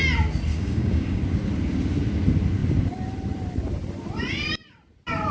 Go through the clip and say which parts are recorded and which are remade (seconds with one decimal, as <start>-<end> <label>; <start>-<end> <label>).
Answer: 0.0-0.5 recorded; 0.5-1.2 remade; 1.2-5.3 recorded